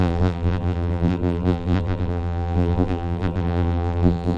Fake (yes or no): yes